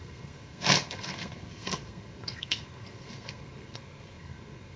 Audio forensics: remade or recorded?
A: remade